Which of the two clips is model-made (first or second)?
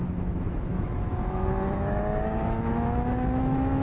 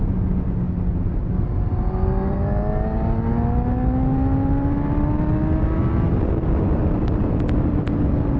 first